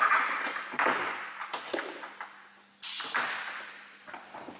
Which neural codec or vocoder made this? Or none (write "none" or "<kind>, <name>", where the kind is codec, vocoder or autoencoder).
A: none